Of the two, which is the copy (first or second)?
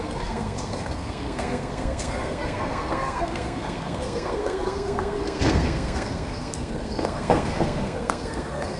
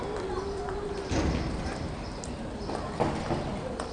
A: first